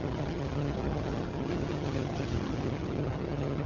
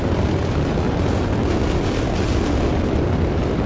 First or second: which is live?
second